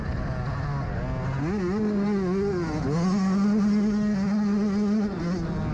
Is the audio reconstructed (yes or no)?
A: no